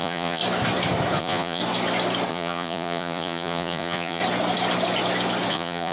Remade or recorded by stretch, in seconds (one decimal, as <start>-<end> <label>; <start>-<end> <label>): 0.0-0.4 remade; 0.4-1.2 recorded; 1.2-1.6 remade; 1.6-2.3 recorded; 2.3-4.2 remade; 4.2-5.5 recorded; 5.5-5.9 remade